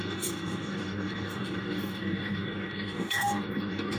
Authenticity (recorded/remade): remade